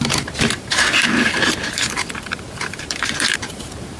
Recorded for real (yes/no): no